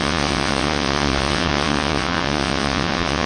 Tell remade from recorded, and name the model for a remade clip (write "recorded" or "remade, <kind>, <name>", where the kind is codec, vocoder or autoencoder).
remade, vocoder, WaveNeXt